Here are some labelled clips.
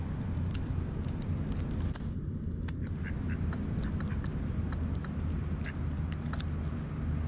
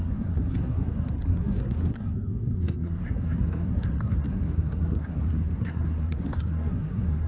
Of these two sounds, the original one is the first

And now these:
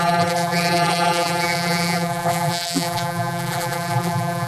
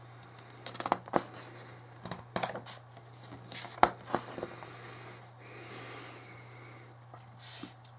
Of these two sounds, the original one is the second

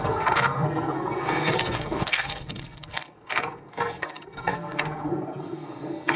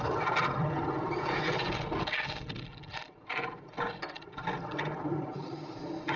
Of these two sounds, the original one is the second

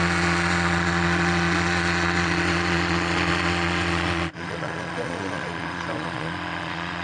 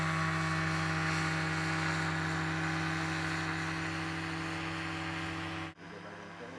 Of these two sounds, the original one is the second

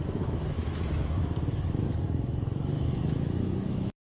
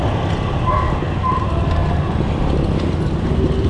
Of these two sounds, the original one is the second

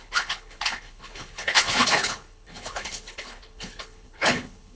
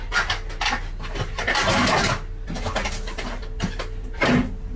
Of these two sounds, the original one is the second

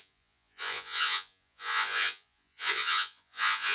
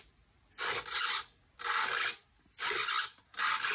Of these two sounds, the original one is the second